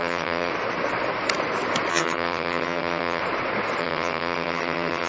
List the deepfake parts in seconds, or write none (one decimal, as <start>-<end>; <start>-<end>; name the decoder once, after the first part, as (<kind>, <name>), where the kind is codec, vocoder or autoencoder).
0.0-0.5 (vocoder, HiFi-GAN); 1.9-3.2; 3.8-5.1

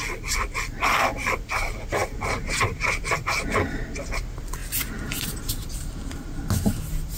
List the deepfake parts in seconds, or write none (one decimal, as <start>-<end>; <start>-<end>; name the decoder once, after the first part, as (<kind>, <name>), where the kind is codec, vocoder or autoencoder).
none